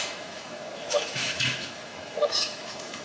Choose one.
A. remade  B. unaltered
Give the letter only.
A